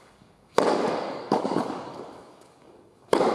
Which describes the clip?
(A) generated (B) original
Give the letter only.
A